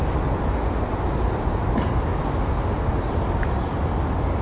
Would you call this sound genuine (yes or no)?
yes